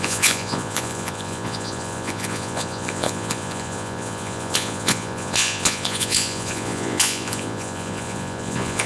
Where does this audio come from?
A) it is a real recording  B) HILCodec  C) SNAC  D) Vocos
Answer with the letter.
D